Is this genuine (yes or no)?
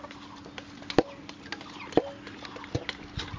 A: yes